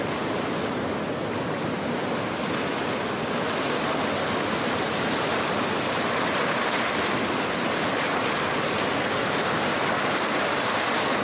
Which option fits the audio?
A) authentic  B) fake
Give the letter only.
A